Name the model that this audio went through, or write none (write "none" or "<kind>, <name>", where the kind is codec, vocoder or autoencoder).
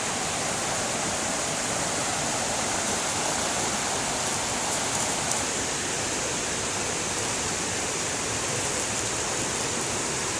vocoder, BigVGAN v2